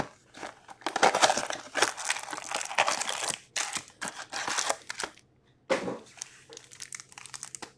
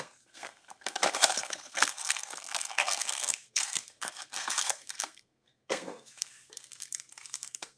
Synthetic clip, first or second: second